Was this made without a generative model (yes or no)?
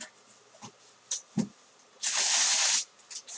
yes